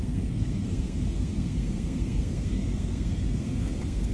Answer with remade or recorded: remade